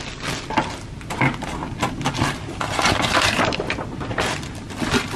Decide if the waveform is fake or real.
real